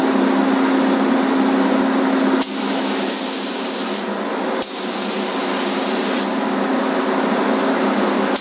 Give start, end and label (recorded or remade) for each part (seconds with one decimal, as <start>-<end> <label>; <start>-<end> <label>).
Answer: 0.0-8.4 recorded